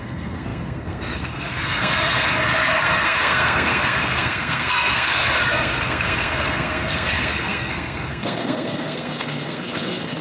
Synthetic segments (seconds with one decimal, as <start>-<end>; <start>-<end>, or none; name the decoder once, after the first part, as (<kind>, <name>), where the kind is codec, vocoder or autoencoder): 0.0-10.2 (codec, SNAC)